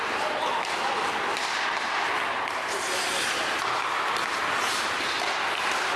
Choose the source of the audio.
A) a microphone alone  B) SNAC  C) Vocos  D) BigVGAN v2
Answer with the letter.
A